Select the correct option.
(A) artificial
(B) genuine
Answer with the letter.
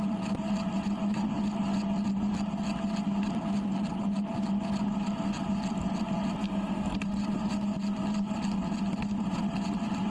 B